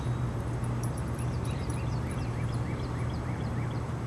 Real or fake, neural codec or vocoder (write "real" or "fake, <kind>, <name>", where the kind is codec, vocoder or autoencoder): fake, vocoder, BigVGAN v2